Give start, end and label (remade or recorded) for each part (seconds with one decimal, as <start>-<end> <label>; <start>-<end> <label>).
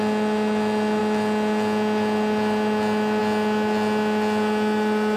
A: 0.0-5.2 recorded